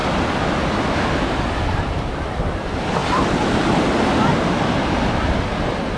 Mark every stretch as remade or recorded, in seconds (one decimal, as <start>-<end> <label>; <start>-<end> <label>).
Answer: 0.0-6.0 recorded